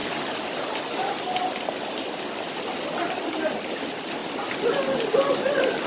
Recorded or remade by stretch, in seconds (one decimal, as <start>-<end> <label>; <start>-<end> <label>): 0.0-5.9 recorded